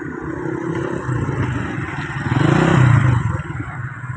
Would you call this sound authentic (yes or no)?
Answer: yes